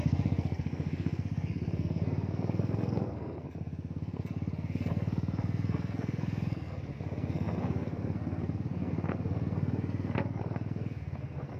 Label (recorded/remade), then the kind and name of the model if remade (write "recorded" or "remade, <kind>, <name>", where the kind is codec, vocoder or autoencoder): remade, codec, SNAC